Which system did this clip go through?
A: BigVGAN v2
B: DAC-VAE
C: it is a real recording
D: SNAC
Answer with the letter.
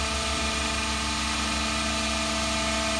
C